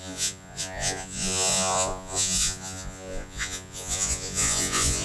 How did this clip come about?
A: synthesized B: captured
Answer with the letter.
A